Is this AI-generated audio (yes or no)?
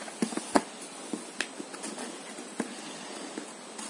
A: no